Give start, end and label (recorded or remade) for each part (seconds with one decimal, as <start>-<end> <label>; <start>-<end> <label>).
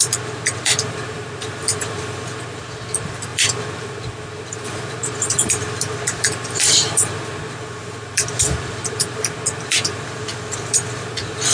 0.0-11.5 remade